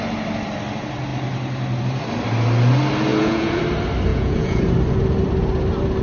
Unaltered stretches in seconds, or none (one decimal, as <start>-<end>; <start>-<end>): 0.0-3.1; 3.6-4.1; 4.6-6.0